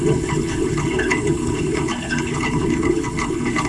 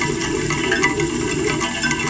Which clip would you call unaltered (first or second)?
second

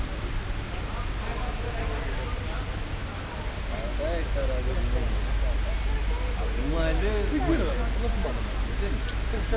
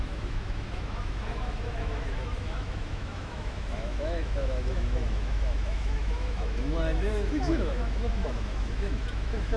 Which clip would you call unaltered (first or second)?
first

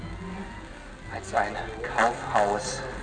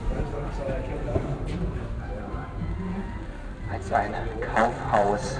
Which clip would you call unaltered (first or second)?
first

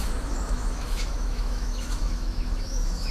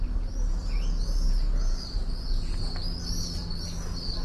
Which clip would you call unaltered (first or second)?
second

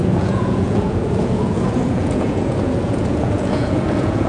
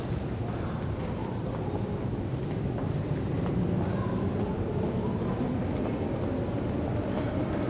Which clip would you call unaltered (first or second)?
second